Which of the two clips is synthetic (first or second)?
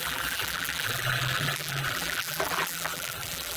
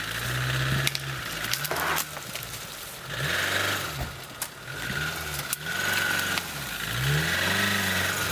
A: first